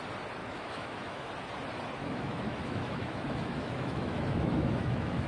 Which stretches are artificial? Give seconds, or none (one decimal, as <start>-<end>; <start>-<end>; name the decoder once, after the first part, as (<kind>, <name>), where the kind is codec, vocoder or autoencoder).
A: 0.4-1.3 (autoencoder, DAC-VAE); 2.0-5.3